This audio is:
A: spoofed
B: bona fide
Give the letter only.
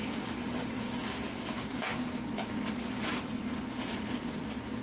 B